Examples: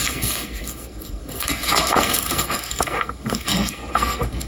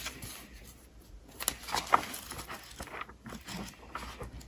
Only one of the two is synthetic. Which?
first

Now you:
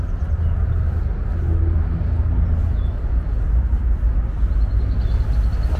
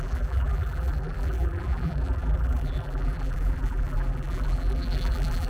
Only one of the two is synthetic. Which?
second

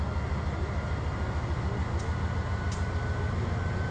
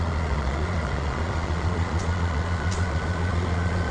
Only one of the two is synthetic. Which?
second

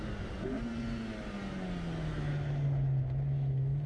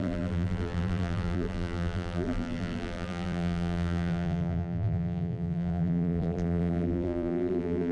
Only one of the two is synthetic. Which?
second